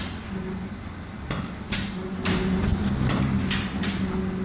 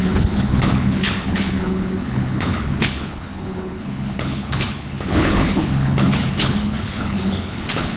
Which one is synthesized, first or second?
second